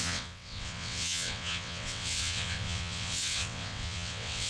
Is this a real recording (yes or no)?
no